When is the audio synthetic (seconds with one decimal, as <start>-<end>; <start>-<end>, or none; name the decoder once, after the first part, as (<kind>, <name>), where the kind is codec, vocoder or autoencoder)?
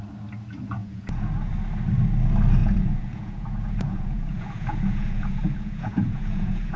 0.8-1.5 (vocoder, Vocos); 2.6-6.8